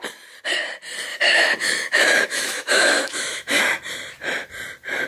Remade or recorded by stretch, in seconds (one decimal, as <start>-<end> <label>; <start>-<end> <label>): 0.0-1.1 recorded; 1.1-3.6 remade; 3.6-5.1 recorded